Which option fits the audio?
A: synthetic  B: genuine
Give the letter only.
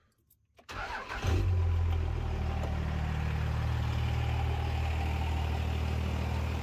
B